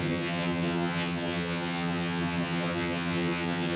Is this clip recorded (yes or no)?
no